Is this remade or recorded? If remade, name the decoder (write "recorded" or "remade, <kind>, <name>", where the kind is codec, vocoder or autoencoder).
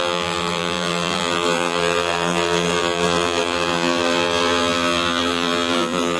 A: remade, vocoder, BigVGAN v2